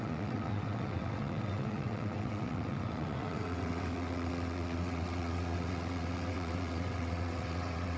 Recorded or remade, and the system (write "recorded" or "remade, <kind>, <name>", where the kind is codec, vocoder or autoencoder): remade, vocoder, WaveNeXt